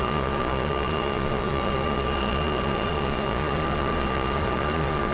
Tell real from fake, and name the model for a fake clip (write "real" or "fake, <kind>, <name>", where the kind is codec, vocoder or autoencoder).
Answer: fake, vocoder, Vocos